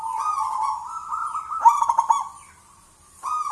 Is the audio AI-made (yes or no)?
no